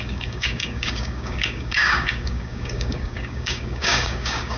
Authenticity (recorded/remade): remade